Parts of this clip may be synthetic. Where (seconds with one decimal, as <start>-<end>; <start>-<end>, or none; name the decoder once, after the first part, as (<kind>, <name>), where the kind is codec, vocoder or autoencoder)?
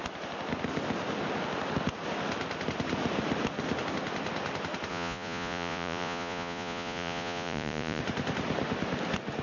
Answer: 4.9-8.0 (vocoder, Vocos)